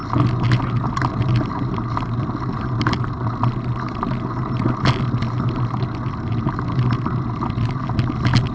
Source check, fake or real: real